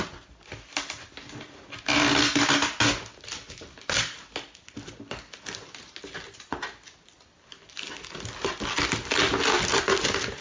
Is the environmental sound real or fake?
real